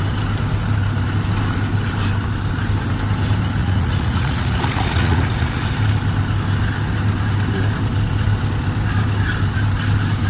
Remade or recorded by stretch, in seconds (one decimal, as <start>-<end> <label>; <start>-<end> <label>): 0.0-3.6 recorded; 3.6-5.6 remade; 5.6-10.3 recorded

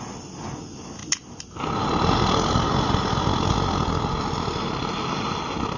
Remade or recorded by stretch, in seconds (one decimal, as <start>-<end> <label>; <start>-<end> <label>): 0.0-5.8 recorded

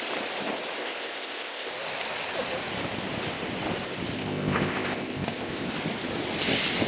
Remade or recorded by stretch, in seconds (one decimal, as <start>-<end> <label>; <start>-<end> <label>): 0.0-0.8 recorded; 0.8-1.7 remade; 1.7-4.2 recorded; 4.2-5.7 remade; 5.7-6.9 recorded

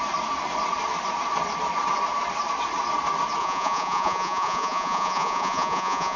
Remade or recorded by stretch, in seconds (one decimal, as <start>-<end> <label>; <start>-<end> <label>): 0.0-3.4 recorded; 3.4-6.2 remade

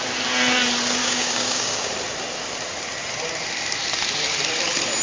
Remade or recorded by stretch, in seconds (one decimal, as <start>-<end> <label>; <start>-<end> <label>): 0.0-1.0 recorded; 1.0-1.9 remade; 1.9-5.0 recorded

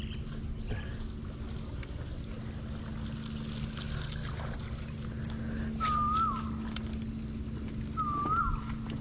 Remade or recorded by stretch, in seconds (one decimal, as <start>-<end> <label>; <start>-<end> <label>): 0.0-9.0 recorded

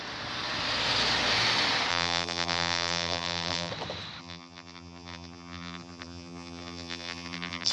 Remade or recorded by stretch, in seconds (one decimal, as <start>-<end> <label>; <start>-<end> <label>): 0.0-1.9 recorded; 1.9-3.7 remade; 3.7-4.2 recorded; 4.2-7.7 remade

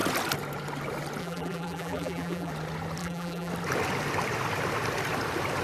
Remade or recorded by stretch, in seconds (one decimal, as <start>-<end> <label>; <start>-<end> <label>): 0.0-1.2 recorded; 1.2-2.5 remade; 2.5-3.0 recorded; 3.0-3.5 remade; 3.5-5.6 recorded